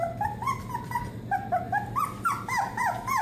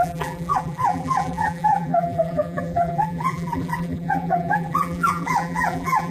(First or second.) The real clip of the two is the first